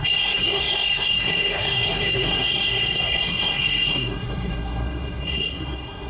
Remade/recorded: remade